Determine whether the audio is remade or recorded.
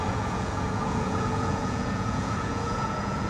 remade